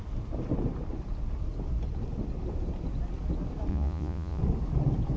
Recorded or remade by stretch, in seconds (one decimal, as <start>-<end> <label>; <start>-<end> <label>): 0.0-3.7 recorded; 3.7-4.4 remade; 4.4-5.2 recorded